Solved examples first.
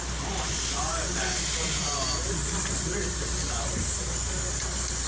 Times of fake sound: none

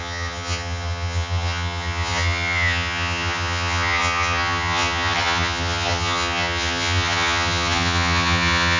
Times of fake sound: 0.0-8.8 (vocoder, HiFi-GAN)

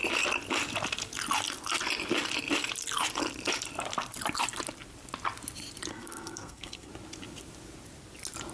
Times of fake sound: 5.9-6.9 (codec, SNAC)

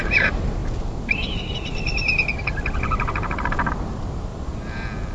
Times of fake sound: 0.0-0.6 (vocoder, BigVGAN v2); 3.7-4.3

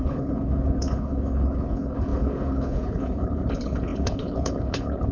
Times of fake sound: 0.0-5.1 (codec, HILCodec)

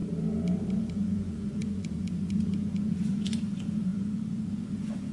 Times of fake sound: 0.8-5.1 (vocoder, Vocos)